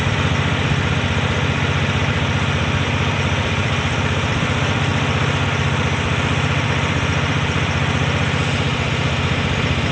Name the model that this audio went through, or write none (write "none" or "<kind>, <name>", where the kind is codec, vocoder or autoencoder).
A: vocoder, BigVGAN v2